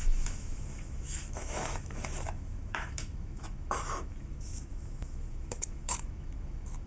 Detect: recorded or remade remade